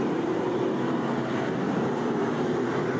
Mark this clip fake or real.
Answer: fake